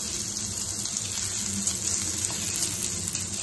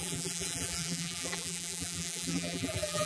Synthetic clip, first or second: second